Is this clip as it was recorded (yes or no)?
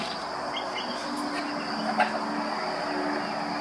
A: yes